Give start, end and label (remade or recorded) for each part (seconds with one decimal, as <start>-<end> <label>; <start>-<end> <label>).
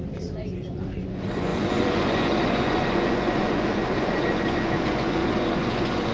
0.0-6.1 remade